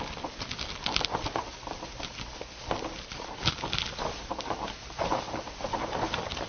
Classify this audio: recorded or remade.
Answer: recorded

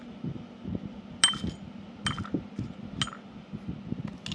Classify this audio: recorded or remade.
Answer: recorded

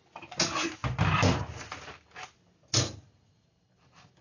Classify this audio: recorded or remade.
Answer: recorded